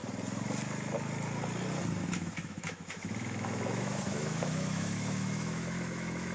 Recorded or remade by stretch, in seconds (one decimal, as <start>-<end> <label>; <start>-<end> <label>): 0.0-2.1 recorded; 2.1-6.3 remade